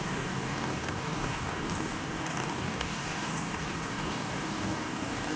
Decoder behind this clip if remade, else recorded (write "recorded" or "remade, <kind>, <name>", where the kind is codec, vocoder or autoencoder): remade, codec, DAC